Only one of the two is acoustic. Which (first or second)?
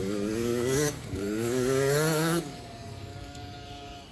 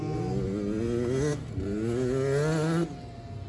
second